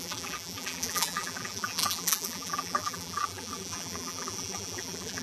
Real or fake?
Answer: fake